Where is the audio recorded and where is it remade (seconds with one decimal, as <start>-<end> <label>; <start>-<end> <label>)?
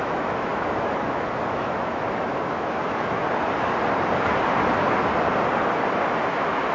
0.0-3.2 remade; 3.2-6.3 recorded; 6.3-6.7 remade